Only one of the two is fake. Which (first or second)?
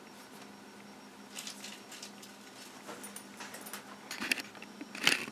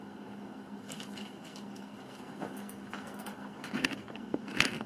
second